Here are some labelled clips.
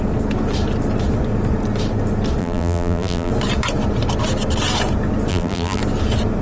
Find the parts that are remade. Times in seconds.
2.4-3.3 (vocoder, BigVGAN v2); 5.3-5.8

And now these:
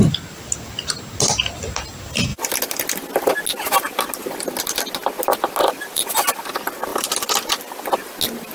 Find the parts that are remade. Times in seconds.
5.6-6.3 (vocoder, BigVGAN v2); 6.9-8.0

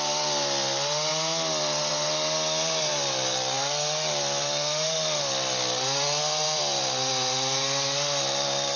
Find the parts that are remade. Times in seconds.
none

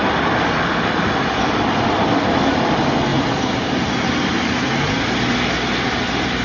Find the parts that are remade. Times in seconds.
3.1-4.3 (vocoder, BigVGAN v2)

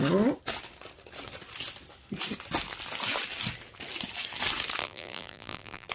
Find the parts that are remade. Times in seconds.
4.8-5.9 (vocoder, BigVGAN v2)

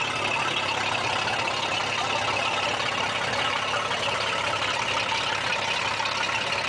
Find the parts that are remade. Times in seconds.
none